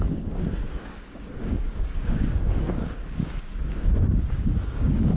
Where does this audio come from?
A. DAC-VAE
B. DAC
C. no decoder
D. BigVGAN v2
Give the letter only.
B